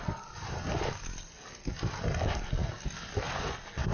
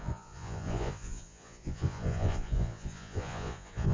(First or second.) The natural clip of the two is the first